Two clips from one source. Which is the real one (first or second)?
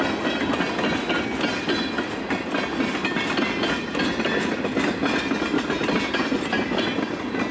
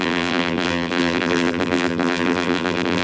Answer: first